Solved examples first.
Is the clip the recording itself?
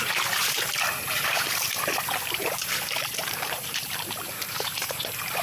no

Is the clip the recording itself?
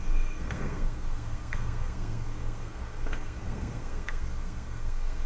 no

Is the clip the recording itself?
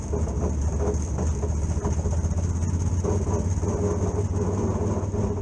yes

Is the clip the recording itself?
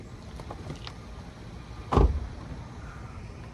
yes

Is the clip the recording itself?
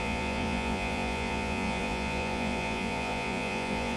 no